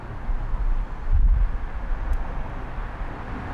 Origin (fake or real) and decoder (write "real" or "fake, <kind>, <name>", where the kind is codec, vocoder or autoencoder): real